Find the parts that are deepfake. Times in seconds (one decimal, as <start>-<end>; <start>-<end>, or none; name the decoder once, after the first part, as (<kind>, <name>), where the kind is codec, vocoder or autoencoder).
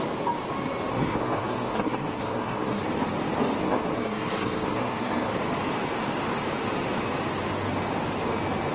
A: 0.9-2.8 (codec, SNAC); 3.6-5.4